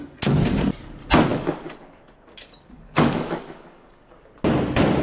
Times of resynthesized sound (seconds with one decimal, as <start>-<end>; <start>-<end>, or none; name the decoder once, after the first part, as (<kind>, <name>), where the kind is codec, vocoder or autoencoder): 1.3-4.3 (codec, DAC)